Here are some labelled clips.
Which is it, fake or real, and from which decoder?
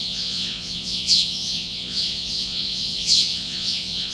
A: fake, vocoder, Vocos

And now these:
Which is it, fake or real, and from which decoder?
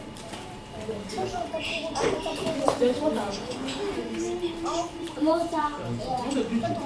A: fake, vocoder, BigVGAN v2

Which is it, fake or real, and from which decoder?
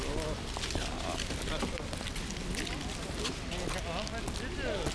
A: real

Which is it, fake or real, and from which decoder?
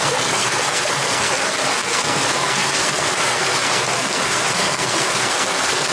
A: fake, codec, SNAC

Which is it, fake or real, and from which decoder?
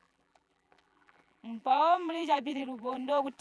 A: fake, vocoder, BigVGAN v2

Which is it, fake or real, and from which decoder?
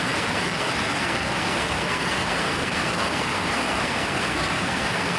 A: fake, codec, SNAC